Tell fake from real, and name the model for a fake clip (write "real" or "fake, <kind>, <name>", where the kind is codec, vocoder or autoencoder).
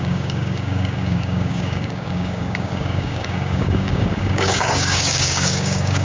fake, codec, DAC